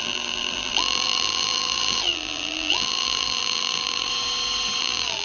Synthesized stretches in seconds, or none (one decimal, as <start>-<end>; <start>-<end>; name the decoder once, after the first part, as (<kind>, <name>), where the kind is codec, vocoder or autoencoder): 0.0-4.1 (vocoder, BigVGAN v2); 4.8-5.2